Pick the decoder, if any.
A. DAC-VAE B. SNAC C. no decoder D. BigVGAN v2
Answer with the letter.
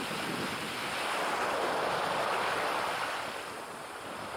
C